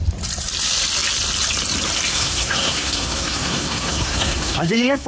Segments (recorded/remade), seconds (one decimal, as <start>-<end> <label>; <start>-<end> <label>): 0.0-2.1 recorded; 2.1-5.1 remade